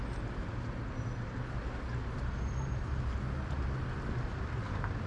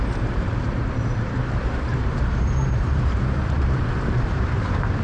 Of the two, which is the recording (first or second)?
first